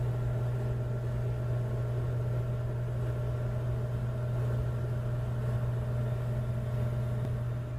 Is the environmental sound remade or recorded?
recorded